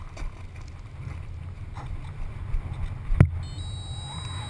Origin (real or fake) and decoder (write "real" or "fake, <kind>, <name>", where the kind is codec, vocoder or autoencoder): real